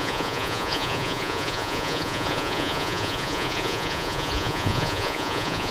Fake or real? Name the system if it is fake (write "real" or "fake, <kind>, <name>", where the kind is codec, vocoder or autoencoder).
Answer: fake, vocoder, Vocos